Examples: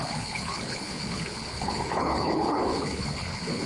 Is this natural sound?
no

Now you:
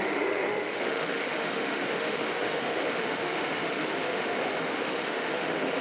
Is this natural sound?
no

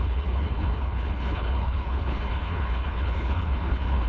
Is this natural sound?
no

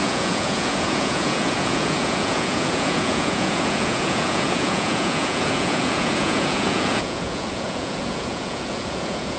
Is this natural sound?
no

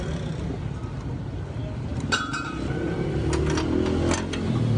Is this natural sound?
yes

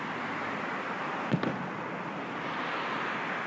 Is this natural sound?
yes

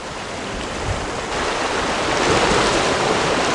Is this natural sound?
yes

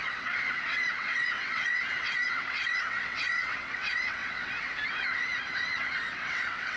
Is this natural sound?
no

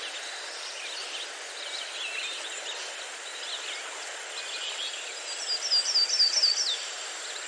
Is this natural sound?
yes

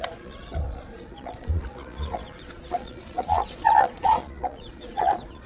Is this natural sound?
no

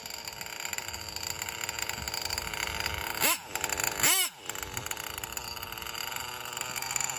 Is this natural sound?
yes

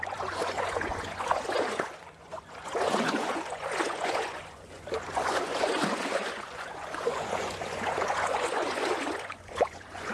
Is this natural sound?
no